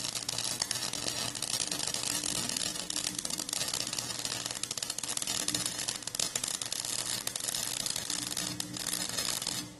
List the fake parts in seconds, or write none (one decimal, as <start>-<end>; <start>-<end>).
2.7-4.1